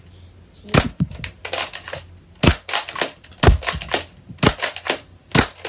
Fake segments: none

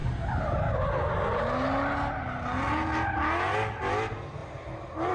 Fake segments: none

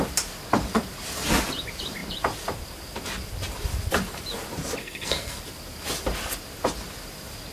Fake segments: 4.8-5.4 (codec, SNAC)

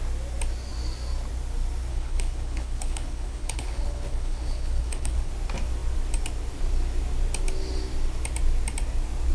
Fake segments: 1.9-5.3 (codec, HILCodec)